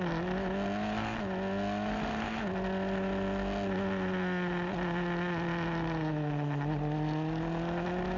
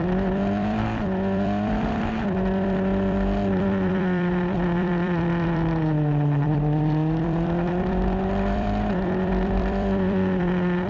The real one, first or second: first